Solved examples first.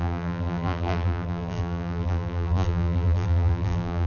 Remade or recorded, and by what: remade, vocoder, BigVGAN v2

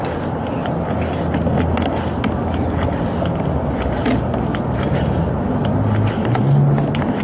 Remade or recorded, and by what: recorded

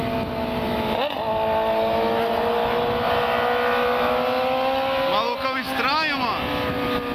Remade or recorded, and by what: recorded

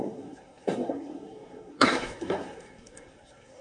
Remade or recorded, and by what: remade, codec, SNAC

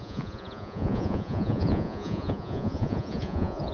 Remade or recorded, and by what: remade, vocoder, Vocos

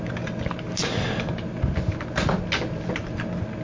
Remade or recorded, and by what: recorded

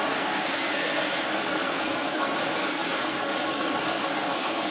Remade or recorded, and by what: remade, codec, SNAC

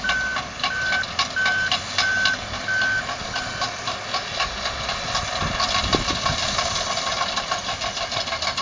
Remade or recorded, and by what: recorded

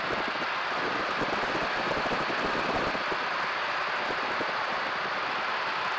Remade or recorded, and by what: recorded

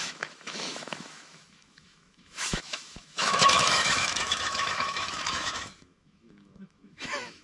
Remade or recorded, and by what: remade, autoencoder, DAC-VAE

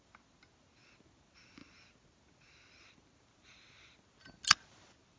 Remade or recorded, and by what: recorded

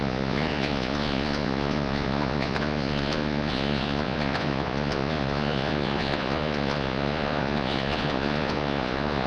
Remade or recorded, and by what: remade, vocoder, Vocos